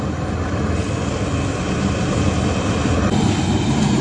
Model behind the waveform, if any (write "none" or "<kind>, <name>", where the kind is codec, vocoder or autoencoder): none